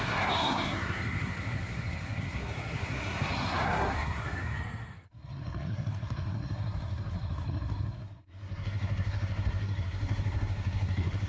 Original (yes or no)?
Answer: no